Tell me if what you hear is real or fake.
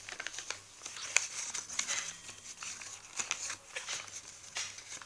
real